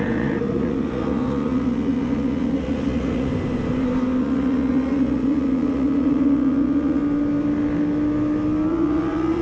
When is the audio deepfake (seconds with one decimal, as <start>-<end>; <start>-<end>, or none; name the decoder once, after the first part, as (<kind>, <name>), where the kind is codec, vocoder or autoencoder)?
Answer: 0.0-3.3 (vocoder, Vocos); 4.2-7.0; 8.7-9.4